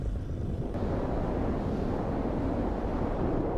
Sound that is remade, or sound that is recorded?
recorded